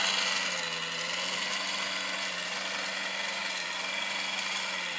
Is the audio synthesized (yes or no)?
no